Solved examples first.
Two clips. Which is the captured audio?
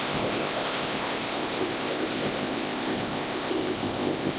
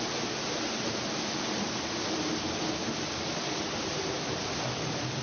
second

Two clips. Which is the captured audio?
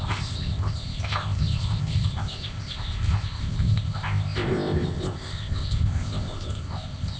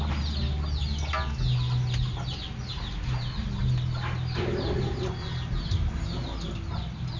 second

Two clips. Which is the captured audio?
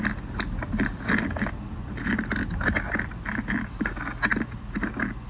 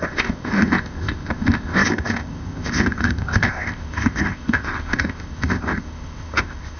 first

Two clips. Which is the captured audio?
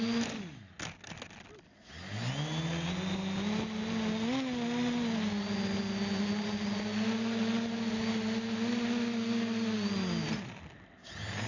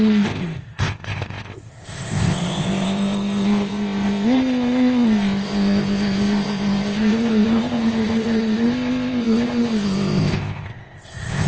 first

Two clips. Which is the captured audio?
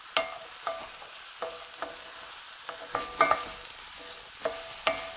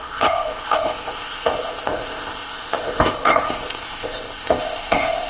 first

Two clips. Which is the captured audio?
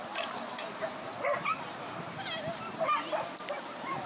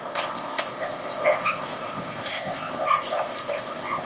first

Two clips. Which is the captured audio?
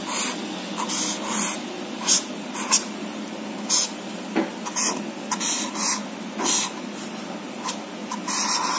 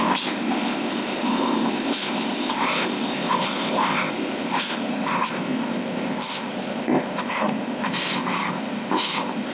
first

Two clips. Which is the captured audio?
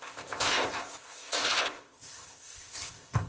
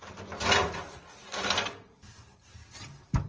second